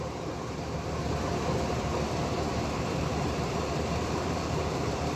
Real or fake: fake